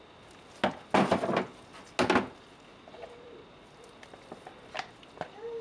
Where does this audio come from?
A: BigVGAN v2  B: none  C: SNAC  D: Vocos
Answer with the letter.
B